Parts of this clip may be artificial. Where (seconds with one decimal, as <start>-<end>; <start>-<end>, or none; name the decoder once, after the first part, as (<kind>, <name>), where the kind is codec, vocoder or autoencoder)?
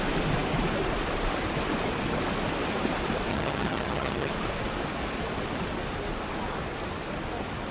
3.3-4.3 (vocoder, HiFi-GAN)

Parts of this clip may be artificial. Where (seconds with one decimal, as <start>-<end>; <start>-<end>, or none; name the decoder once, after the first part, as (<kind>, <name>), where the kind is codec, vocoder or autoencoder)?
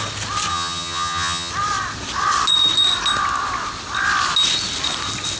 0.5-1.5 (vocoder, HiFi-GAN)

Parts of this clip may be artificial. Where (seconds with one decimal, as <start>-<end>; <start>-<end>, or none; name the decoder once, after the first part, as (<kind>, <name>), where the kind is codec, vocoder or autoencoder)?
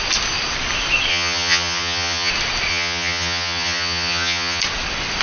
1.1-2.3 (vocoder, HiFi-GAN); 2.7-4.6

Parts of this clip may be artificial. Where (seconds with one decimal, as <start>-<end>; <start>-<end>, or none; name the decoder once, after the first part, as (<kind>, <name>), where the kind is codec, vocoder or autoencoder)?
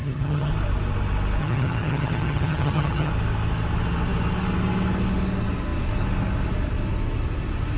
0.0-0.5 (vocoder, HiFi-GAN); 1.4-3.1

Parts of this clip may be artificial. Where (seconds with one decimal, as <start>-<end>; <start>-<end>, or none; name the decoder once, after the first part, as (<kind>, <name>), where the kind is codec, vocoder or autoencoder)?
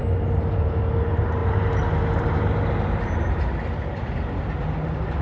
none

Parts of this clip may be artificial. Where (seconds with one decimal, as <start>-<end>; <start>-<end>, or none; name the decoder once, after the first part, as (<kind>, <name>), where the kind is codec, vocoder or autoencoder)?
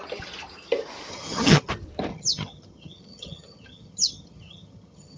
1.1-1.7 (vocoder, HiFi-GAN); 2.1-5.2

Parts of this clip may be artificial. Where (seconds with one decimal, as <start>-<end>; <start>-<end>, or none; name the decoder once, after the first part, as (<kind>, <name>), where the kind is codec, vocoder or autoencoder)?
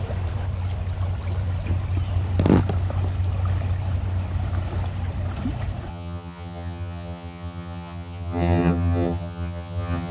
5.9-10.1 (vocoder, HiFi-GAN)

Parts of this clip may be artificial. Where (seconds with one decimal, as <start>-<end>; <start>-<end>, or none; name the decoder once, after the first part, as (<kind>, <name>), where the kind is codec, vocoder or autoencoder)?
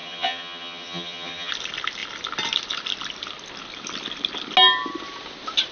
0.0-1.5 (vocoder, HiFi-GAN)